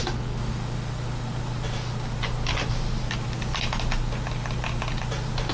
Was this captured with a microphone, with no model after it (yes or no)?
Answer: yes